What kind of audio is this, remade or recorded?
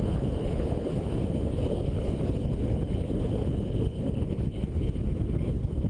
remade